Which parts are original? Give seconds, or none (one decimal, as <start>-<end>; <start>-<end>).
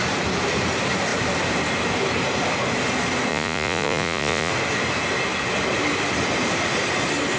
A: 0.0-3.3; 4.5-7.4